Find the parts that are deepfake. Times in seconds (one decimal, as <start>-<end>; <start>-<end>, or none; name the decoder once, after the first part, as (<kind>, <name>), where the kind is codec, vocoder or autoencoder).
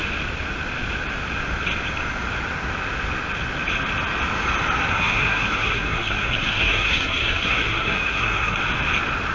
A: 4.9-8.6 (codec, SNAC)